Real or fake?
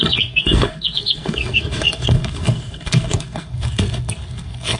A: fake